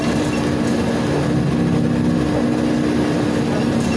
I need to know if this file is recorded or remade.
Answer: recorded